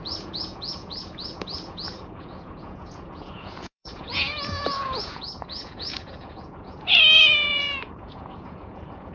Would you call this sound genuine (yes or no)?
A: no